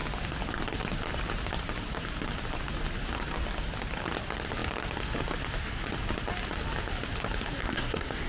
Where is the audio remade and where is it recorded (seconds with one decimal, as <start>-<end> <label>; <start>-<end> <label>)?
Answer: 0.0-7.6 recorded; 7.6-8.3 remade